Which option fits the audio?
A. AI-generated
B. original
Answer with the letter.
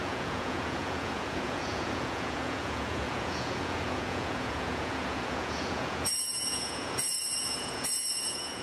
A